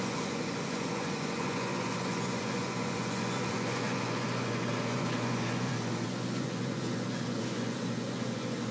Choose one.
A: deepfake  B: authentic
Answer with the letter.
A